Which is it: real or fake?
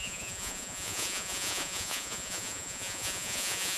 fake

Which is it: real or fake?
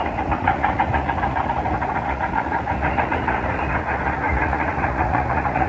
fake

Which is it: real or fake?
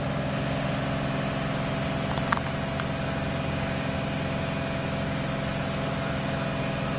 real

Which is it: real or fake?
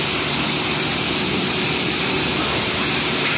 real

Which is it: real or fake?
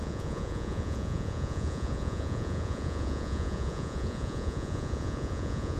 fake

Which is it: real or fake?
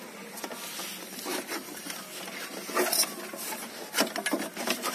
real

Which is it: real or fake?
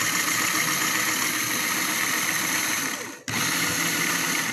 real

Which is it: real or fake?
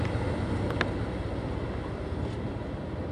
real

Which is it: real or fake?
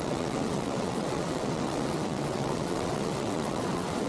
fake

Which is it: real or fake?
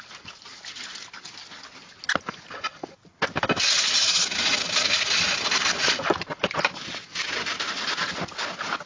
real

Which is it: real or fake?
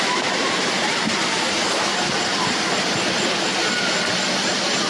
real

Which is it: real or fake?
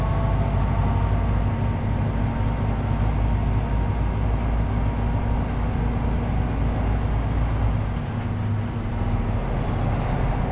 real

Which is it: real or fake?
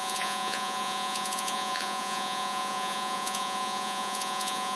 fake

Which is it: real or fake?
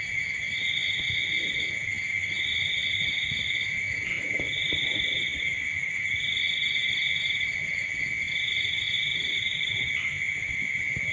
real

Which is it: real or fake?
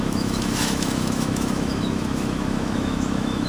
fake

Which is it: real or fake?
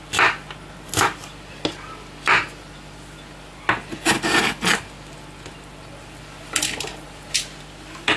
real